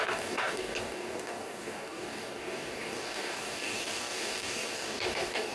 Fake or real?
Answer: fake